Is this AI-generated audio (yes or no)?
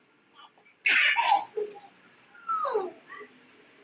no